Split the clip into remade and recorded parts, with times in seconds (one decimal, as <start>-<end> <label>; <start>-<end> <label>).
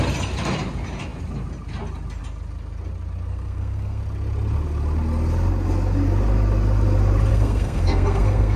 0.0-3.3 recorded; 3.3-4.0 remade; 4.0-7.3 recorded; 7.3-8.6 remade